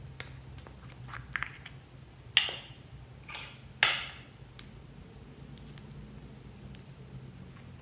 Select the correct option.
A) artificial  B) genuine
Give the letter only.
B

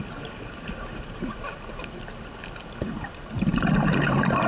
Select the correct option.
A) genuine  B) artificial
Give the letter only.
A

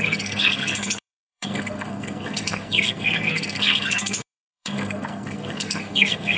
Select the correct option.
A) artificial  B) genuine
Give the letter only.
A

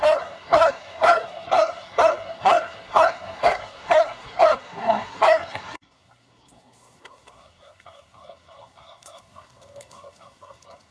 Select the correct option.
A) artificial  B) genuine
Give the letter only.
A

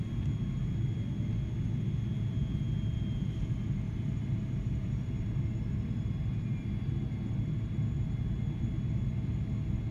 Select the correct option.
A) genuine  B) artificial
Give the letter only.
A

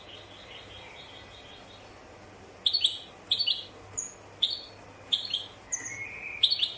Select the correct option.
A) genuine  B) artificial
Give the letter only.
A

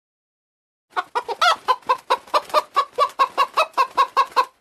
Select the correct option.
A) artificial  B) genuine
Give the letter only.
B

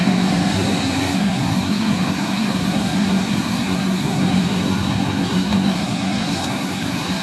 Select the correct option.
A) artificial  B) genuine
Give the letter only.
A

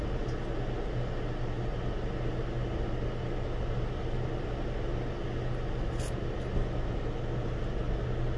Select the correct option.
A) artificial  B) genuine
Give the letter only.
B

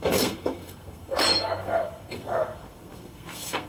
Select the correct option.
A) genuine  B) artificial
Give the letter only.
B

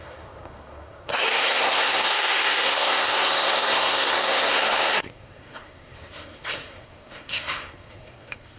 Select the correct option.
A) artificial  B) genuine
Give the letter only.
A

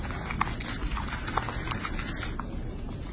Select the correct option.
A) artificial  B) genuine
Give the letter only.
B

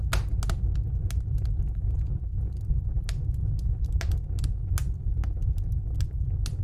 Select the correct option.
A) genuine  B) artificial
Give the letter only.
A